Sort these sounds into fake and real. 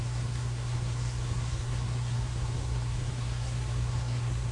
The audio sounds fake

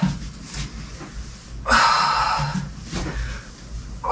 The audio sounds real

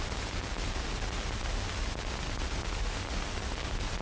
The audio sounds real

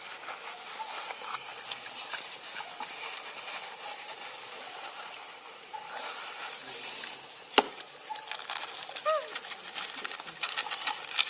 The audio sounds real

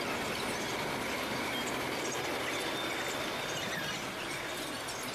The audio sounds real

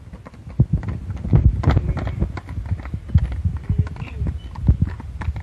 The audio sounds real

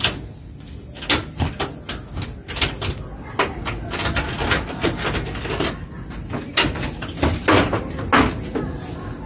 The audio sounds real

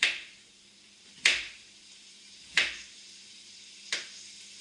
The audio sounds fake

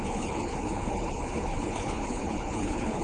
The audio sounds fake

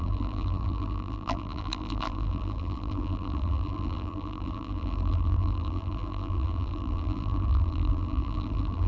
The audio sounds fake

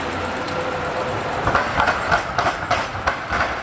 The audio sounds fake